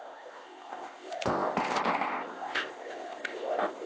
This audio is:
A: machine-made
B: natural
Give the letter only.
A